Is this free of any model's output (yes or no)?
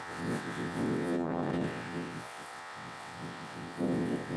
no